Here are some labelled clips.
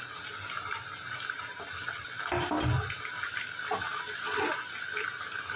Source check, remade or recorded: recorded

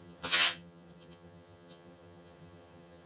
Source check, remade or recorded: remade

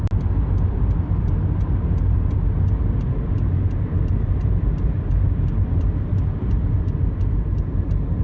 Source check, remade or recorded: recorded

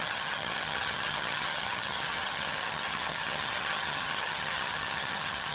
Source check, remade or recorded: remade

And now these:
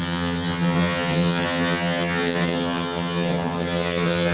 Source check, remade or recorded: remade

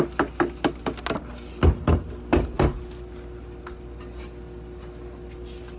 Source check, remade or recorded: recorded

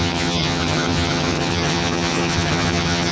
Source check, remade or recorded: remade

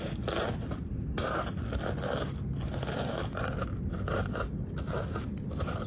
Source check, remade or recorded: recorded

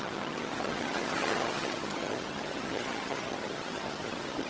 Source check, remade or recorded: remade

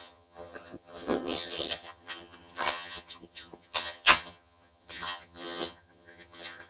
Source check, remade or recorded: remade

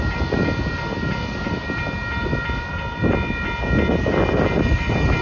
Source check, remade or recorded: recorded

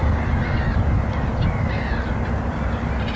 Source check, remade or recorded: recorded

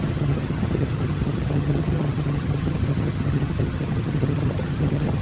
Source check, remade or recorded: remade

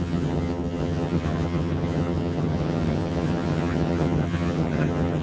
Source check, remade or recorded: remade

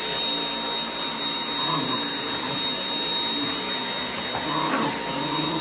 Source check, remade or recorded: recorded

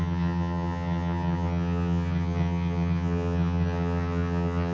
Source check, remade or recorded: remade